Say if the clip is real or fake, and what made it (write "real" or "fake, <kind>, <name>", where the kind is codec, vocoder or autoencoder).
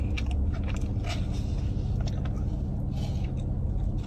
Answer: real